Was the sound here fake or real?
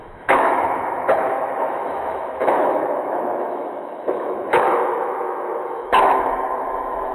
fake